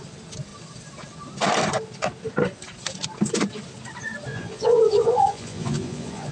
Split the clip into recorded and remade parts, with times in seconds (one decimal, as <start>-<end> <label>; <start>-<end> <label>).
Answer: 0.0-4.3 recorded; 4.3-6.3 remade